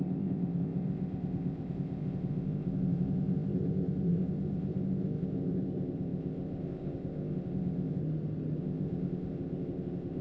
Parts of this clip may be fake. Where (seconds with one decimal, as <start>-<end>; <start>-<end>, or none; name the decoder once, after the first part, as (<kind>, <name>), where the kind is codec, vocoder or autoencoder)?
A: 0.0-8.0 (codec, ZipCodec); 8.6-10.2